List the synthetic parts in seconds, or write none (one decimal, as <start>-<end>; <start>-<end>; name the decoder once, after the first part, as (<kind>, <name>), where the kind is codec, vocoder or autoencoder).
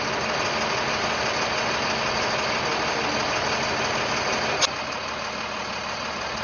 none